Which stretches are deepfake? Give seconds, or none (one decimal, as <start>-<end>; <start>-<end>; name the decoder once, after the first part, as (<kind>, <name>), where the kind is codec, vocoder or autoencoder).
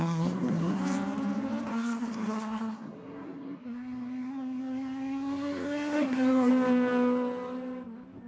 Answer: 0.0-0.8 (codec, SNAC); 1.7-6.5